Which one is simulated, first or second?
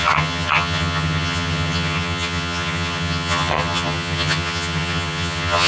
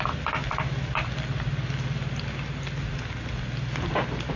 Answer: first